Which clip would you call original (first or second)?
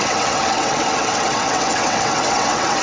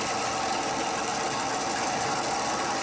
second